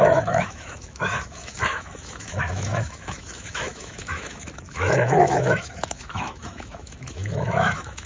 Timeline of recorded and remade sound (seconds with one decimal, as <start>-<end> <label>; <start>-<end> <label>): 0.0-8.1 remade